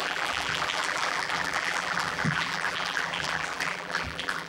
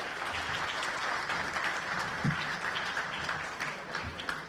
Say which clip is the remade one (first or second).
first